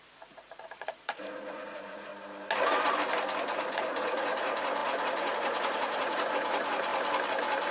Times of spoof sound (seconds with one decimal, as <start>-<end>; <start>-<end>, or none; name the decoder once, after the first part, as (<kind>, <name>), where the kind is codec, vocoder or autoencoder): 0.0-2.1 (vocoder, Vocos); 3.4-6.9